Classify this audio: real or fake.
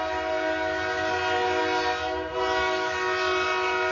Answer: real